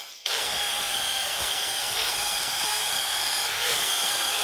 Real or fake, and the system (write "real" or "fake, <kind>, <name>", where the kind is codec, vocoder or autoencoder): fake, codec, SNAC